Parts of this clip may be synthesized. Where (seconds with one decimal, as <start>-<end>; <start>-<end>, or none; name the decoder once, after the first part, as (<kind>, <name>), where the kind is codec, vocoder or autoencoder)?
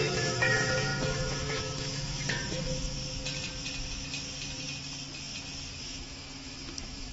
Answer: 0.0-3.0 (autoencoder, DAC-VAE); 5.8-7.1